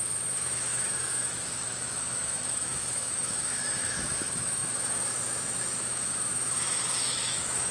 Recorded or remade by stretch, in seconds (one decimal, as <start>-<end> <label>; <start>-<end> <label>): 0.0-7.7 remade